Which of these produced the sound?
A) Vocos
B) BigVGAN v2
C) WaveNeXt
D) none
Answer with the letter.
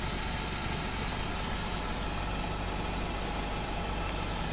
D